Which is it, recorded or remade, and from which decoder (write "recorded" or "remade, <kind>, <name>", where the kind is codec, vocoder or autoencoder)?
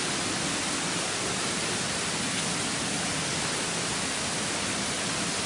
recorded